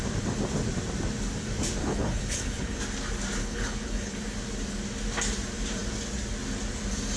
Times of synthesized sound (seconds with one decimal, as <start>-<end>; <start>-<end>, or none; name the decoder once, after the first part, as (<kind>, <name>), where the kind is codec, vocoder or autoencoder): 1.8-2.8 (codec, HILCodec); 3.4-4.2